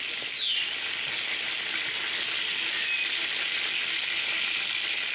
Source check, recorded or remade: recorded